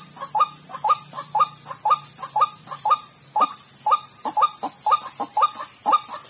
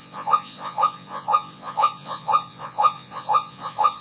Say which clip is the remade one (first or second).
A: second